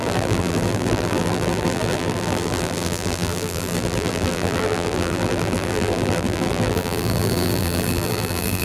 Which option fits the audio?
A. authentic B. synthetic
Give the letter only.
B